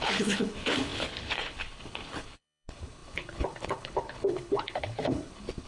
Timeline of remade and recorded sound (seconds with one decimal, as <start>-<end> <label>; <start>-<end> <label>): 0.0-5.7 remade